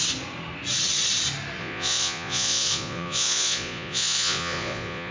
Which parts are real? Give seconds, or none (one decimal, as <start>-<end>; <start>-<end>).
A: 0.0-1.6

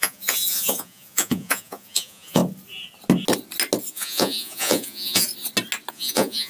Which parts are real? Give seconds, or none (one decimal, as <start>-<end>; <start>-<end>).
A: 2.4-3.8; 5.3-5.9

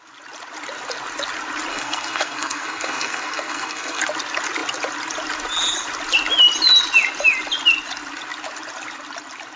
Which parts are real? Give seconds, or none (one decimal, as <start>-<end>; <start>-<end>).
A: 0.0-1.7; 4.0-9.6

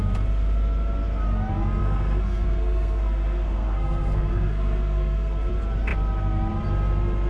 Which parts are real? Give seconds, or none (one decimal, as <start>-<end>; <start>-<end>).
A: 0.0-1.8; 5.5-7.3

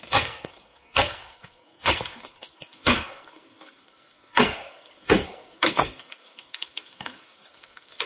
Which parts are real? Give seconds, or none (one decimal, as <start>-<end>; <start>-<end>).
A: none